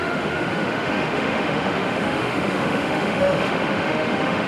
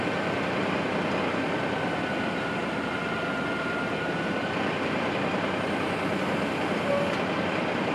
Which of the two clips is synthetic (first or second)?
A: first